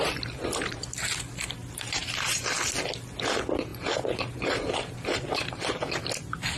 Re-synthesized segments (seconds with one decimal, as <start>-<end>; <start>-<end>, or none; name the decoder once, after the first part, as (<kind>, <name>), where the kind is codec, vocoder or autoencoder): 1.6-2.4 (vocoder, BigVGAN v2); 3.7-6.0